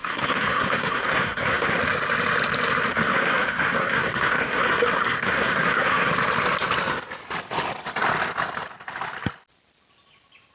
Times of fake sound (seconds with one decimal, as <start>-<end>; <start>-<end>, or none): 0.0-1.8; 2.9-6.1